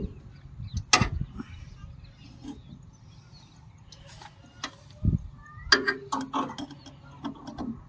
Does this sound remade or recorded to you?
recorded